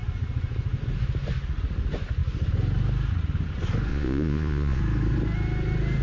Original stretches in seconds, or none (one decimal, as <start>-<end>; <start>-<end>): 0.0-3.9; 4.8-6.0

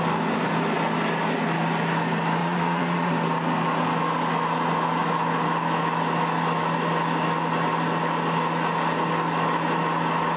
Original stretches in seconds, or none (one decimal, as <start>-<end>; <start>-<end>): 0.0-2.4; 3.1-10.4

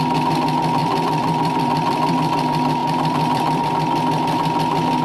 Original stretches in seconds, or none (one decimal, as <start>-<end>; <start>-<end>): 0.0-0.8; 2.3-2.8; 3.6-5.0

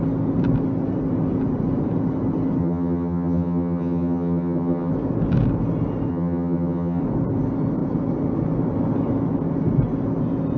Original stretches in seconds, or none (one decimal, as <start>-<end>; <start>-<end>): 0.0-2.6; 4.9-6.1; 7.0-10.6

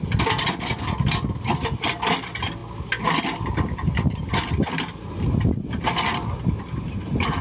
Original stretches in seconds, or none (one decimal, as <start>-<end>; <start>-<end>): 0.0-7.4

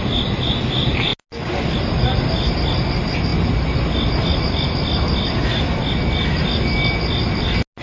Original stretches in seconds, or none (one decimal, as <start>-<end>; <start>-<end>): 0.0-7.8